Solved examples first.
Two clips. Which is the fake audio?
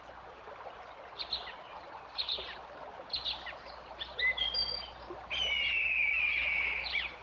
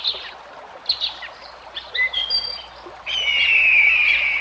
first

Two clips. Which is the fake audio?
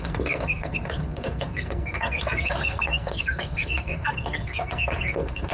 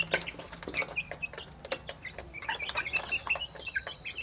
first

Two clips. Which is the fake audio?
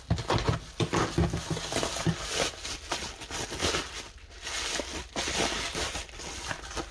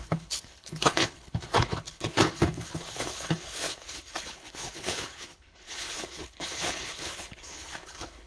second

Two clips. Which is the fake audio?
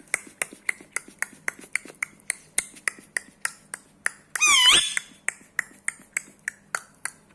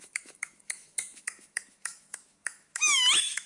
second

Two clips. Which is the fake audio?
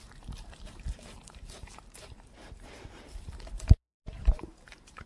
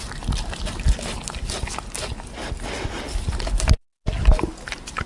first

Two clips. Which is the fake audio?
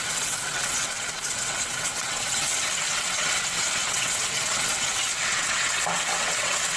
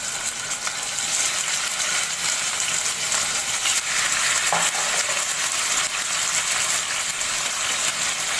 first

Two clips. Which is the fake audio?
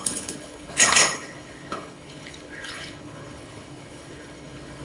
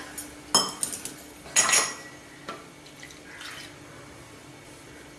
first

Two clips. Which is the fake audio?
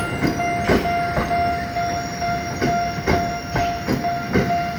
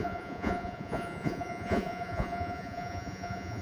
second